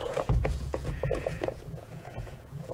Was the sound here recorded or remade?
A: remade